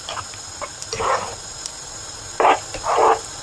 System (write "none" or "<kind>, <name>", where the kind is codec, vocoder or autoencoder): none